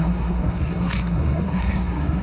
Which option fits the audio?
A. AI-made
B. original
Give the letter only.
A